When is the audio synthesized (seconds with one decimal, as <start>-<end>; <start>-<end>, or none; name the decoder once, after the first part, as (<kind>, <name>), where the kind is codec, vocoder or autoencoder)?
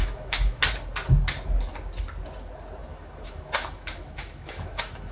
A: 0.0-0.6 (autoencoder, DAC-VAE); 2.8-5.1